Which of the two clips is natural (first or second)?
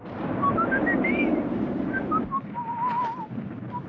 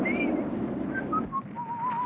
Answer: second